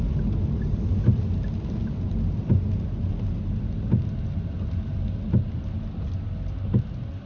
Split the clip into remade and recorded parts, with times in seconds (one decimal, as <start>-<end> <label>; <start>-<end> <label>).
0.0-7.3 recorded